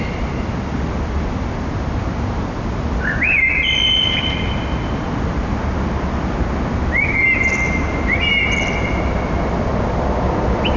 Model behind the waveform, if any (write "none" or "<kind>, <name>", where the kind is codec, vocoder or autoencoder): none